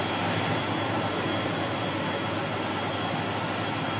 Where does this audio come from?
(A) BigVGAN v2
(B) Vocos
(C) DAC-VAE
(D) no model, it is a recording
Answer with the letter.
D